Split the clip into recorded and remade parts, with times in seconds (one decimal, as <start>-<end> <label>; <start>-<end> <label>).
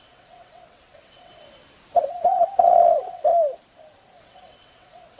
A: 0.0-1.3 remade; 1.3-2.1 recorded; 2.1-3.3 remade; 3.3-4.2 recorded; 4.2-5.2 remade